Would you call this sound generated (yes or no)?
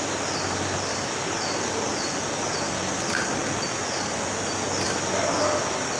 no